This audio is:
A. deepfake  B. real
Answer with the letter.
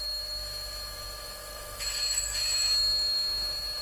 A